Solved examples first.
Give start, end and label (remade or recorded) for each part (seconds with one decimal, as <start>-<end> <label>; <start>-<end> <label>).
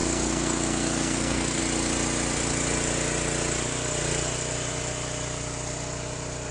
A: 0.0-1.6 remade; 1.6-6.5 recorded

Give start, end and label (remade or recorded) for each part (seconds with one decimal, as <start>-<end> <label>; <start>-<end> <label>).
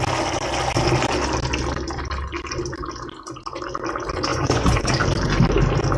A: 0.0-4.3 recorded; 4.3-4.9 remade; 4.9-6.0 recorded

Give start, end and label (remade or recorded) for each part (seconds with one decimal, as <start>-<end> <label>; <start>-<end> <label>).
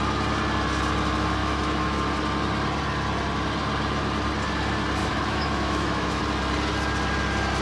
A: 0.0-1.4 recorded; 1.4-2.0 remade; 2.0-5.0 recorded; 5.0-6.2 remade; 6.2-7.6 recorded